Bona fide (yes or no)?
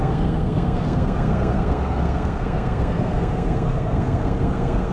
no